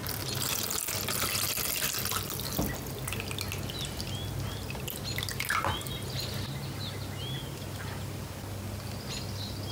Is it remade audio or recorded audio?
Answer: recorded